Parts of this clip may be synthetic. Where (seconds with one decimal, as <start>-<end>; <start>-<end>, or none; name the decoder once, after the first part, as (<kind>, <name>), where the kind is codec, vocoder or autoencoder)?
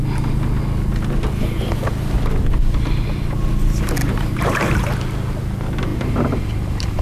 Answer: 4.0-5.0 (vocoder, BigVGAN v2); 5.9-7.0